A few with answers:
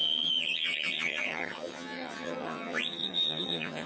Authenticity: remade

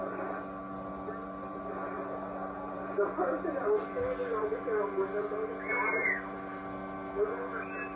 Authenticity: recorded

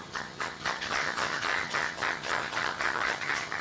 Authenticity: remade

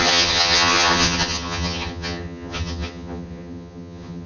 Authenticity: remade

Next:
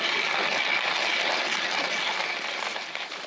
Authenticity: recorded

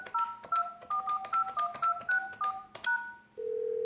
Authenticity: recorded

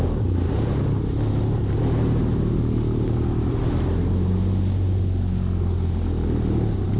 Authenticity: recorded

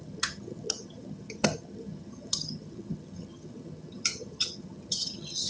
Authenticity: remade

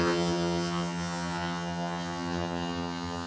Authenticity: remade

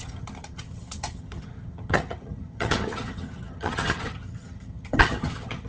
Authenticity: remade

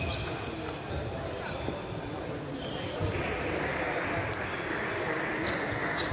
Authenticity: recorded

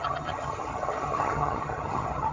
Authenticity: remade